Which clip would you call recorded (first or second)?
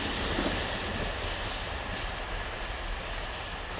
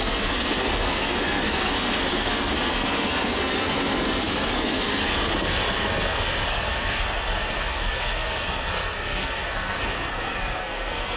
first